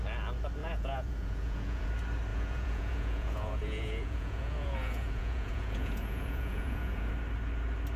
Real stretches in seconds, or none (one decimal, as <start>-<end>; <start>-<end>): 0.0-0.6; 1.9-2.3; 7.1-8.0